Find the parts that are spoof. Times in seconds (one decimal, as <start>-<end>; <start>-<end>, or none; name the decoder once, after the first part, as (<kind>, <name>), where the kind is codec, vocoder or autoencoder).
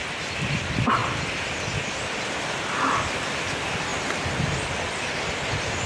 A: 0.0-1.0 (vocoder, BigVGAN v2); 1.9-3.9; 4.5-5.9